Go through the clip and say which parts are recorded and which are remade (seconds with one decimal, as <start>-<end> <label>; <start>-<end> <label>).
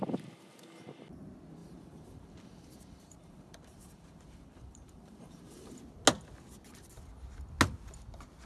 0.0-1.6 recorded; 1.6-5.8 remade; 5.8-8.5 recorded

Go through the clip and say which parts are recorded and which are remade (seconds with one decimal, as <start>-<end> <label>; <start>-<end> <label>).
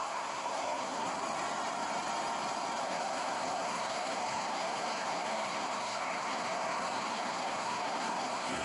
0.0-1.2 remade; 1.2-2.8 recorded; 2.8-8.6 remade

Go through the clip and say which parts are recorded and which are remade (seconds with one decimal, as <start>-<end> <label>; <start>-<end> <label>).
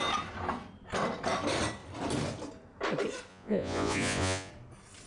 0.0-3.3 recorded; 3.3-4.5 remade; 4.5-5.1 recorded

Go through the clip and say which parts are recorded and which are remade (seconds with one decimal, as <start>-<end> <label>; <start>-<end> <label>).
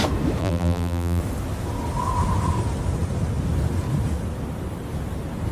0.0-0.4 recorded; 0.4-1.2 remade; 1.2-5.5 recorded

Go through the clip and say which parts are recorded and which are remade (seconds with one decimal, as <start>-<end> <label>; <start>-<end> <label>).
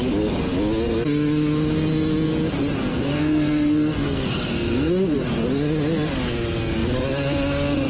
0.0-2.9 recorded; 2.9-4.9 remade; 4.9-7.9 recorded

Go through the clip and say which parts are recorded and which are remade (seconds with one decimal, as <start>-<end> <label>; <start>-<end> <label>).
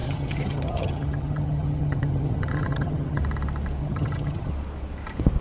0.0-3.2 remade; 3.2-3.8 recorded; 3.8-4.5 remade; 4.5-5.4 recorded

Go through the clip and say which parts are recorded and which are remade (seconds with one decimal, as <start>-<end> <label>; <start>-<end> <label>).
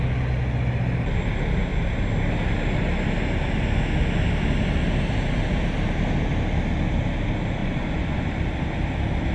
0.0-7.6 recorded; 7.6-8.3 remade; 8.3-9.3 recorded